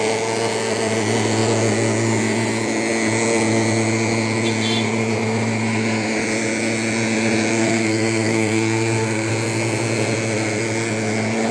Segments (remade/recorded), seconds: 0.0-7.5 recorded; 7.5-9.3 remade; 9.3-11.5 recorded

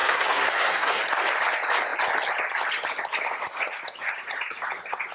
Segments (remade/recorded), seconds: 0.0-1.0 remade; 1.0-5.1 recorded

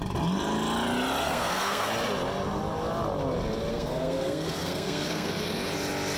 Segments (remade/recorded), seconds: 0.0-1.2 recorded; 1.2-1.9 remade; 1.9-3.7 recorded; 3.7-5.3 remade; 5.3-6.2 recorded

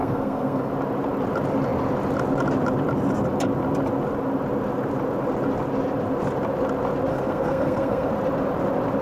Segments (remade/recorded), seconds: 0.0-0.7 remade; 0.7-7.1 recorded; 7.1-8.1 remade; 8.1-9.0 recorded